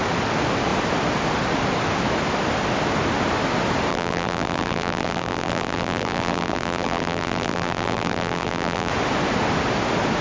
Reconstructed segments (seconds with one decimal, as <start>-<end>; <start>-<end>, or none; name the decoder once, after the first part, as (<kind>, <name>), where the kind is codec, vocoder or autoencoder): 3.9-8.9 (vocoder, BigVGAN v2)